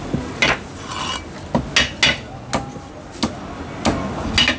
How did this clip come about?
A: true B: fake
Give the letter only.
A